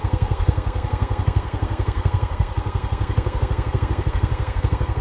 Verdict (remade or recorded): remade